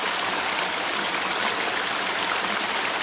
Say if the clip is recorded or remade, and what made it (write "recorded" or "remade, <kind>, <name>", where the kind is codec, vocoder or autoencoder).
recorded